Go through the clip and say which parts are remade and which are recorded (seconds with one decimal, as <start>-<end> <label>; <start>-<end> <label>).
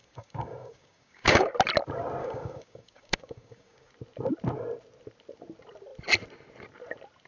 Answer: 0.0-1.5 remade; 1.5-2.2 recorded; 2.2-3.9 remade; 3.9-7.3 recorded